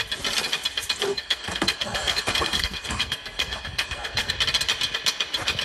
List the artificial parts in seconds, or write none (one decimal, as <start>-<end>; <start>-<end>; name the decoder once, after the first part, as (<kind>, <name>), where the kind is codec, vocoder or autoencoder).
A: 1.1-4.3 (codec, SNAC)